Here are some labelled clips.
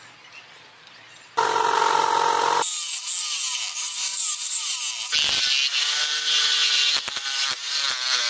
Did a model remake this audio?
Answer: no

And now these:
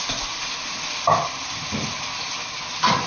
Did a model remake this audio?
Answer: no